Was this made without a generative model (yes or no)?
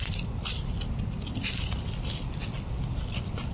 yes